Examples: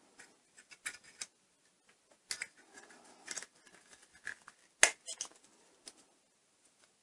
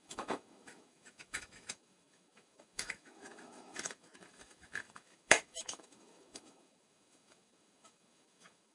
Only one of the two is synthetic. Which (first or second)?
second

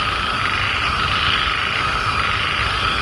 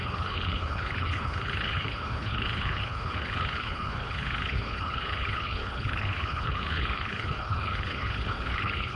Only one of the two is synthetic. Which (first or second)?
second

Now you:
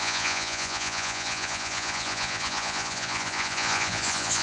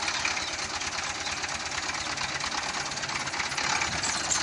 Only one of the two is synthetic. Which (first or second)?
first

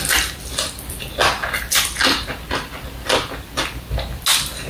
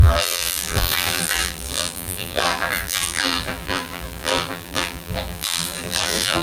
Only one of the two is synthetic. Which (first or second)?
second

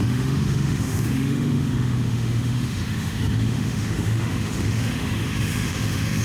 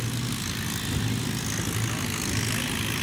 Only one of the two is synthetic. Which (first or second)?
first